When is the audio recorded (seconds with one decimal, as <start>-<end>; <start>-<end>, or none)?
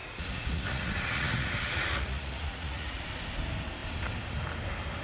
3.0-5.0